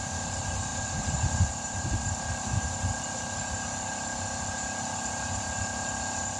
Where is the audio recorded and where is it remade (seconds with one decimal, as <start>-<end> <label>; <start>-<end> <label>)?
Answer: 0.0-0.7 recorded; 0.7-2.0 remade; 2.0-6.4 recorded